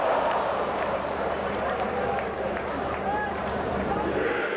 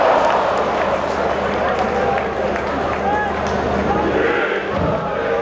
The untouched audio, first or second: second